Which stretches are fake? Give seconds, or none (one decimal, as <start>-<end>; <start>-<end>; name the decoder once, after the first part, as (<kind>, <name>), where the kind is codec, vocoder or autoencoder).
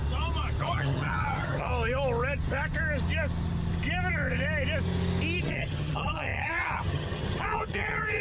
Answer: 0.6-1.7 (vocoder, HiFi-GAN); 5.4-8.2